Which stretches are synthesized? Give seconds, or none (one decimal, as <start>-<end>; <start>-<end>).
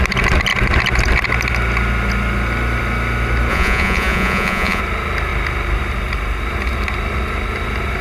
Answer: 3.5-4.8